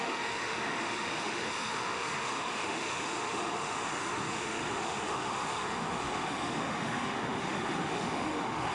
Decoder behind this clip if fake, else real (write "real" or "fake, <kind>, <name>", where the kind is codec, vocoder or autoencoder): fake, autoencoder, DAC-VAE